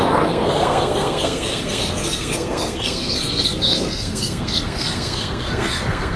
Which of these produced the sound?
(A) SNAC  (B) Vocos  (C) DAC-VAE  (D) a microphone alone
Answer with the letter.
A